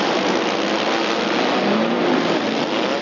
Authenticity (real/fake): real